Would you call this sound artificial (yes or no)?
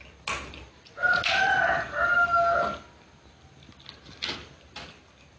no